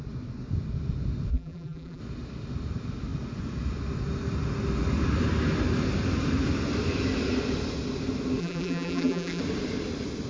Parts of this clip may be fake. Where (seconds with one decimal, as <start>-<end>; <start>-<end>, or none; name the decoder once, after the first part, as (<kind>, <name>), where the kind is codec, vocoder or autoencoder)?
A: 1.3-2.0 (vocoder, BigVGAN v2); 8.4-9.4